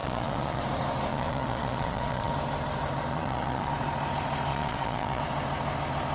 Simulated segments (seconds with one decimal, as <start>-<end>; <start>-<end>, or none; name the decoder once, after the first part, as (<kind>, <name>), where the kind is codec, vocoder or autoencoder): 0.0-0.6 (vocoder, Vocos); 1.1-2.3; 3.1-3.7; 4.5-5.2